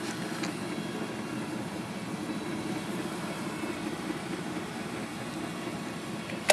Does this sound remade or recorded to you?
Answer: recorded